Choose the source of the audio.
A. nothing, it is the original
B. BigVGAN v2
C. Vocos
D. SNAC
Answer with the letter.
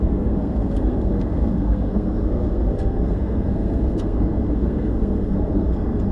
D